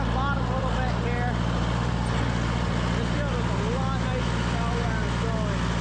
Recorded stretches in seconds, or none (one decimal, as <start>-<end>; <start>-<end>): 0.0-5.8